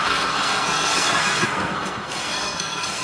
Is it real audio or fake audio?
fake